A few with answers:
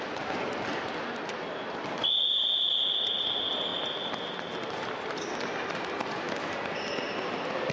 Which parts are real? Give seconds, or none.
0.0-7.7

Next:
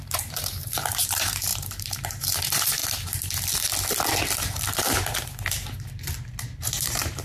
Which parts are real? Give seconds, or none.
2.8-6.6

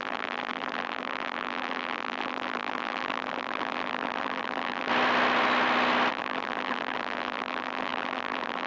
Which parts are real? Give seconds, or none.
4.9-6.1